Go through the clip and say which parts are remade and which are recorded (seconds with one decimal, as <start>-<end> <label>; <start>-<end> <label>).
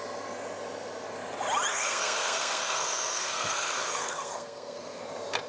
0.0-1.7 recorded; 1.7-5.0 remade; 5.0-5.5 recorded